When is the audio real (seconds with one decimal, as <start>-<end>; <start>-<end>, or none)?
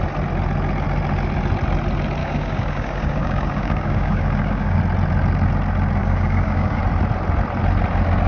0.0-2.2; 4.8-6.0; 6.8-8.3